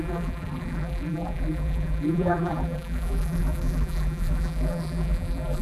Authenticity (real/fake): fake